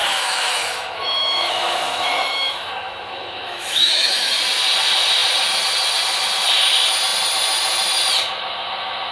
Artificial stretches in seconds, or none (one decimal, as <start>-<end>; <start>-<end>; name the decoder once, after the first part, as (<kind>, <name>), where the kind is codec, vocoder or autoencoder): 0.0-4.4 (autoencoder, DAC-VAE)